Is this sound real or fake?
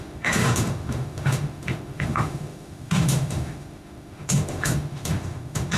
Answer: fake